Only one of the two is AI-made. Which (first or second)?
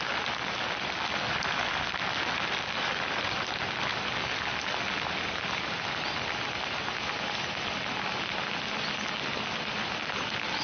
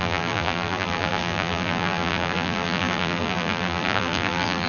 second